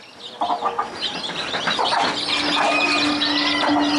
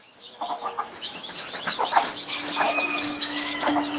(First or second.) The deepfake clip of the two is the second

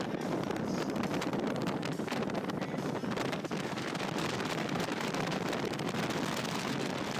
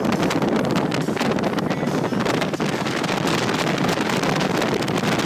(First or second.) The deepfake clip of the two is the first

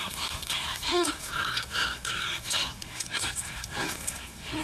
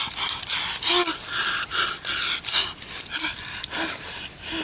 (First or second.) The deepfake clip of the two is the first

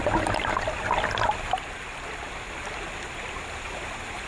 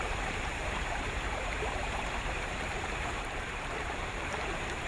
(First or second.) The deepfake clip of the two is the second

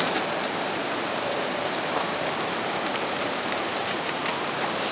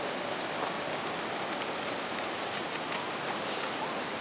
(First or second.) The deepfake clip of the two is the first